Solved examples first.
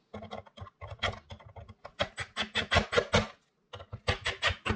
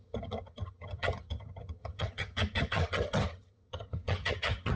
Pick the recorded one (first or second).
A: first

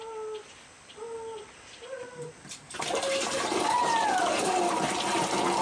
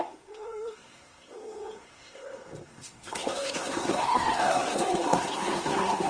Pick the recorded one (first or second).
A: first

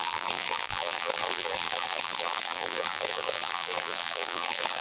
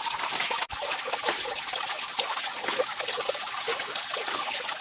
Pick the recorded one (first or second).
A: second